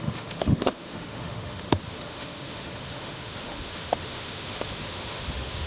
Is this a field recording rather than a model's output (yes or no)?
no